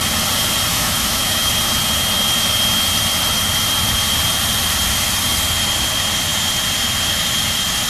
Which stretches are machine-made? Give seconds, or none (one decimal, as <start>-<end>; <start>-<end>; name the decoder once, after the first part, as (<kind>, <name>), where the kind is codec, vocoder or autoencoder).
0.7-1.5 (autoencoder, DAC-VAE)